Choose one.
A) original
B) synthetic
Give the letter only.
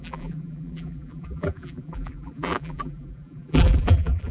B